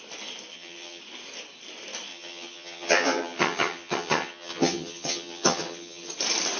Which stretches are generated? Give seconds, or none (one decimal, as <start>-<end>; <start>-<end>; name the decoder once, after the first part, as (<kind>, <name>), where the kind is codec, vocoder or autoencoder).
0.5-1.0 (vocoder, HiFi-GAN); 2.1-6.1